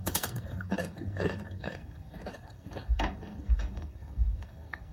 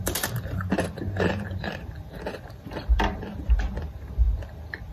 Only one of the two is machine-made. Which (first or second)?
first